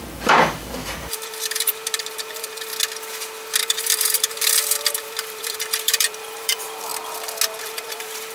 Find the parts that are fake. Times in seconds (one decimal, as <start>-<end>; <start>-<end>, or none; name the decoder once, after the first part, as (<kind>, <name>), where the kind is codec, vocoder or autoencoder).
0.0-2.7 (vocoder, BigVGAN v2); 3.6-6.9; 7.6-8.3

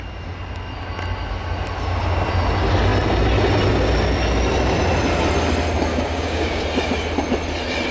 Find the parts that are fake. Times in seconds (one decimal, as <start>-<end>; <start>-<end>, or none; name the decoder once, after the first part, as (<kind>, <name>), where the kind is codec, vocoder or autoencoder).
5.9-6.6 (codec, DAC)

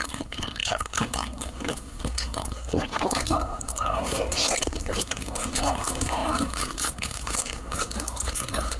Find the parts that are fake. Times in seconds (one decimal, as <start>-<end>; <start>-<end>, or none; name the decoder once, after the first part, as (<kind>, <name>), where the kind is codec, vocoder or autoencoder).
0.0-8.8 (codec, SNAC)